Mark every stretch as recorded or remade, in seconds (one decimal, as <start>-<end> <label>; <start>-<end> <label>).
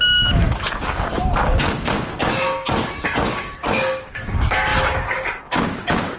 0.0-6.2 remade